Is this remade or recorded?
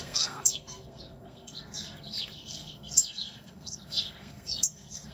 remade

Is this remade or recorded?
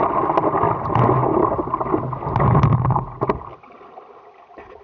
recorded